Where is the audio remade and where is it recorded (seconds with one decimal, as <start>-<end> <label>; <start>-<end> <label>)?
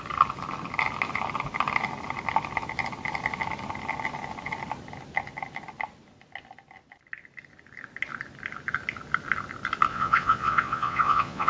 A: 0.0-9.9 recorded; 9.9-11.5 remade